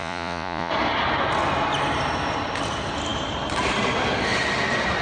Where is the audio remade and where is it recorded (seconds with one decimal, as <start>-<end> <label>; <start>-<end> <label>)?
0.0-0.7 remade; 0.7-5.0 recorded